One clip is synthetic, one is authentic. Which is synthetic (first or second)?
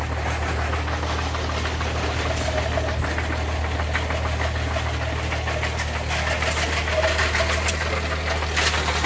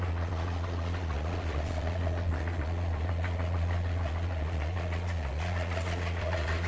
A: second